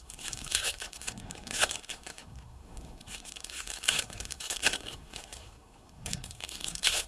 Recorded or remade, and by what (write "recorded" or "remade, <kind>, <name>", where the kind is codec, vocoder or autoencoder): remade, codec, SNAC